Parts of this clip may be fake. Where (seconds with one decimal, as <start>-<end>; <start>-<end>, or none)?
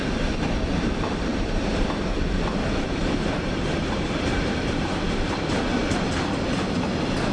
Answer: 1.3-2.0; 3.0-5.2